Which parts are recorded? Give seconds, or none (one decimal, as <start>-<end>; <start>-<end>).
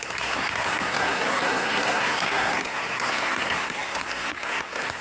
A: none